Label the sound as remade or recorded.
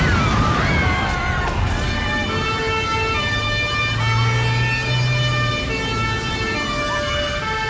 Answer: recorded